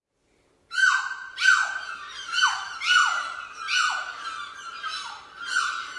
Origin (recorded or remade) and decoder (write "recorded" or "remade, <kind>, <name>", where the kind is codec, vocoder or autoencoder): recorded